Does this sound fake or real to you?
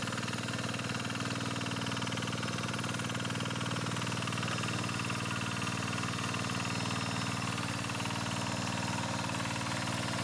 real